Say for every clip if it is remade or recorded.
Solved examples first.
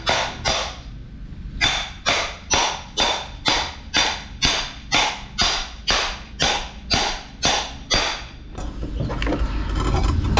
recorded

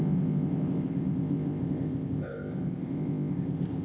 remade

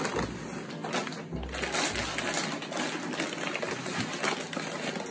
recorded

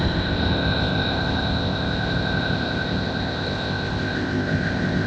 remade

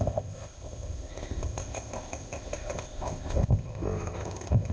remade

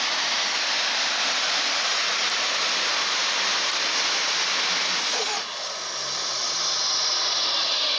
recorded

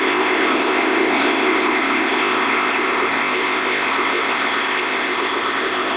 remade